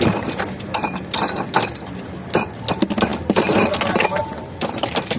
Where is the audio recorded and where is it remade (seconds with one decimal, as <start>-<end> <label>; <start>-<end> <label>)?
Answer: 0.0-5.2 recorded